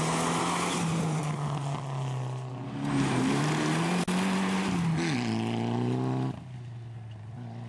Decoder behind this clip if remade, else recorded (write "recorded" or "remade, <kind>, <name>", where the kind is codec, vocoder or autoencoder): recorded